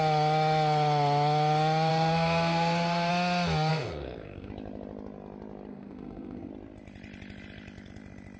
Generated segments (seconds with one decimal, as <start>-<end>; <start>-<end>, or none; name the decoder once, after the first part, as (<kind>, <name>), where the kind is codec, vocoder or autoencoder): 1.9-3.1 (codec, SNAC); 3.7-4.5; 5.7-6.5